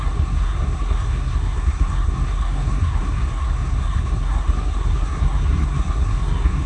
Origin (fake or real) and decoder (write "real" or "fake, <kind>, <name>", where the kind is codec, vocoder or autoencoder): fake, codec, SNAC